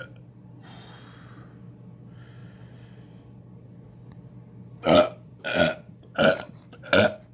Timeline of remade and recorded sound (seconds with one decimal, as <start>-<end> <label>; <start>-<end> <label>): 0.0-7.3 recorded